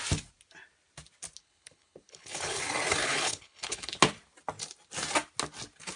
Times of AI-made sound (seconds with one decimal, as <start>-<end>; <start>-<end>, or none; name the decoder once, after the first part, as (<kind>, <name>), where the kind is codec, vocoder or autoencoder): 1.4-2.6 (codec, HILCodec); 3.0-4.0